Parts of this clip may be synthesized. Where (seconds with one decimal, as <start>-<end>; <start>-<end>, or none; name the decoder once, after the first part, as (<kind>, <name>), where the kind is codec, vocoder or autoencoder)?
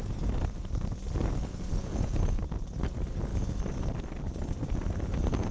1.8-2.4 (vocoder, Vocos)